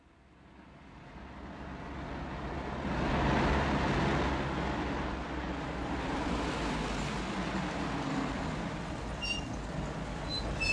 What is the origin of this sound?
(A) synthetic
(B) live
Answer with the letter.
B